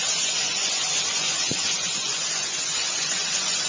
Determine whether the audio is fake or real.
fake